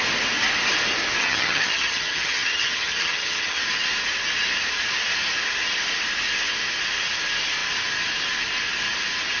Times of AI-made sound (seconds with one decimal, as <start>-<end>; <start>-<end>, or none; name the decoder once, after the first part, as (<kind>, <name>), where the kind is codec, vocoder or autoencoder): 1.2-3.6 (vocoder, HiFi-GAN)